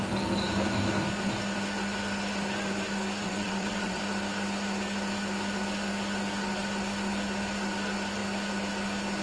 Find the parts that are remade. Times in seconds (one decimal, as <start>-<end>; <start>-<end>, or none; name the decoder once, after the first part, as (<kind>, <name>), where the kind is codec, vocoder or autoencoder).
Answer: 3.2-4.0 (vocoder, WaveNeXt)